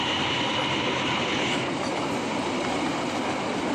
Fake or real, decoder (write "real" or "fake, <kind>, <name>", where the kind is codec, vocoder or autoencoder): real